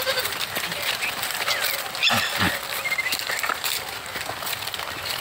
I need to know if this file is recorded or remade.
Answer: recorded